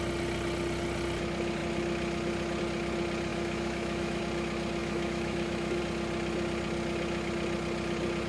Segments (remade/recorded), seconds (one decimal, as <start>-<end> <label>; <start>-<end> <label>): 0.0-3.3 recorded; 3.3-4.2 remade; 4.2-4.8 recorded; 4.8-5.8 remade; 5.8-8.3 recorded